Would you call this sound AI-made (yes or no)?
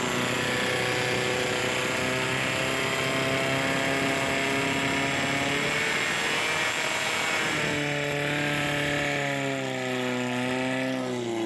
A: no